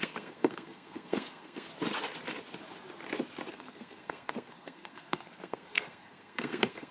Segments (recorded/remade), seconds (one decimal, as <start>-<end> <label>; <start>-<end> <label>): 0.0-1.7 remade; 1.7-3.5 recorded; 3.5-6.9 remade